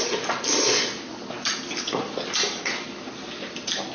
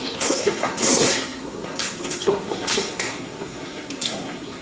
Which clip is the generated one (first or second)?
second